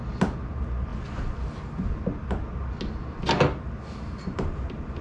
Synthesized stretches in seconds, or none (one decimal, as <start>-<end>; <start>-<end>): none